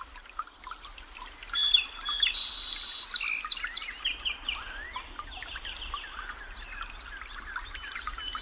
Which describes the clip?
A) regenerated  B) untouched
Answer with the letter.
B